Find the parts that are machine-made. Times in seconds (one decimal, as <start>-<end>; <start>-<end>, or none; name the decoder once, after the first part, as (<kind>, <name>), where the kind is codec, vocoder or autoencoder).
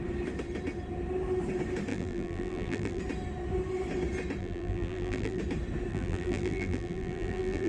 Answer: 1.9-3.0 (vocoder, BigVGAN v2); 4.4-5.4; 5.9-7.7